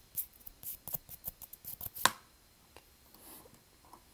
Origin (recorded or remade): recorded